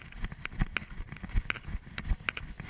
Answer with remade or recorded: recorded